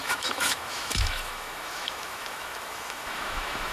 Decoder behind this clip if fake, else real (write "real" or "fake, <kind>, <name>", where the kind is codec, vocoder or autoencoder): fake, autoencoder, DAC-VAE